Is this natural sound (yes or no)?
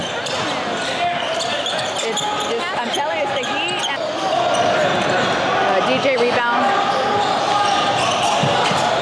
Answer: yes